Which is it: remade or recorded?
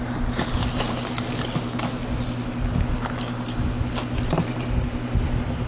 recorded